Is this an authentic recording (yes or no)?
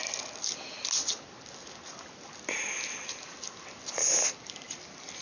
yes